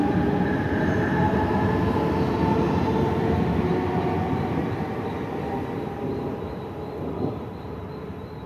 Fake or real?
real